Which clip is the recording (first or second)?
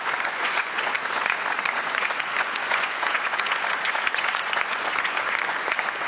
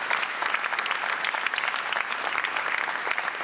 second